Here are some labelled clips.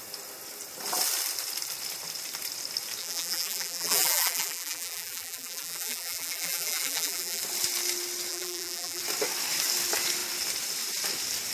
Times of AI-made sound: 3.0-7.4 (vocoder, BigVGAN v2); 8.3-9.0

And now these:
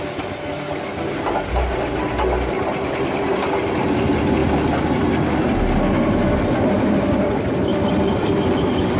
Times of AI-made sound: none